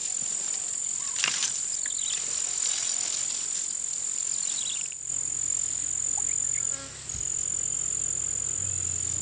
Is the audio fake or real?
real